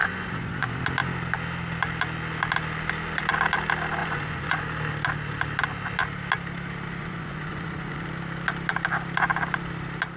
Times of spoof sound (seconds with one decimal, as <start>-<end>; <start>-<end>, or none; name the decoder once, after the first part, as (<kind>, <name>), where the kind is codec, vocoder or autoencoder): 0.0-0.8 (vocoder, Vocos); 4.0-4.6; 7.0-8.1